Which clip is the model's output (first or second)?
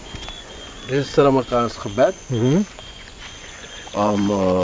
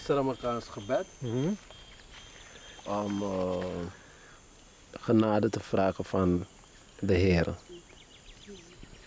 first